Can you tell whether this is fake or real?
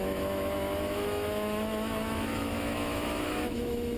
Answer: fake